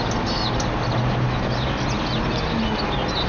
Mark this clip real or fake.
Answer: real